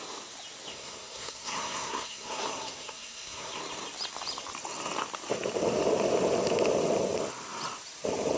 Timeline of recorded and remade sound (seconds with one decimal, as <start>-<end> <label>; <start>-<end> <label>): 0.0-0.7 recorded; 0.7-3.6 remade; 3.6-8.4 recorded